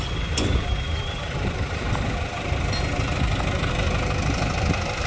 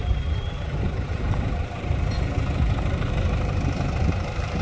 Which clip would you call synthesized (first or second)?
second